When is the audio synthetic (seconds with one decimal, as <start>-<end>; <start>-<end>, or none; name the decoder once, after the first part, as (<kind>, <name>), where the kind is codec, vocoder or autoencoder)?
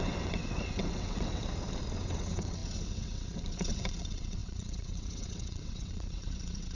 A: 0.0-1.4 (vocoder, WaveNeXt); 2.0-6.7